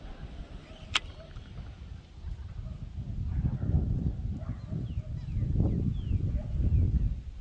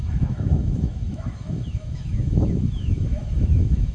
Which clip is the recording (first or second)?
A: first